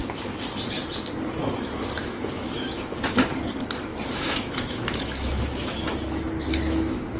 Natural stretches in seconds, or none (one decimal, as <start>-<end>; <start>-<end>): 0.0-1.4; 3.3-3.9